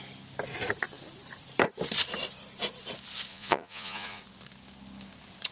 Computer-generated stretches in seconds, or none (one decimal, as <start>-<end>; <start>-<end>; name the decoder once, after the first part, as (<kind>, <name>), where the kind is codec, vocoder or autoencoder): 3.3-4.2 (vocoder, Vocos)